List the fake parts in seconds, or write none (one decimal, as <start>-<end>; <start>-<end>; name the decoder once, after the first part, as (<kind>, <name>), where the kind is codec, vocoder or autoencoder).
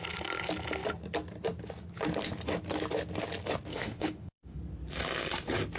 3.7-4.6 (autoencoder, DAC-VAE)